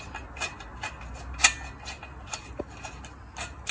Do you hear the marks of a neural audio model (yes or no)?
no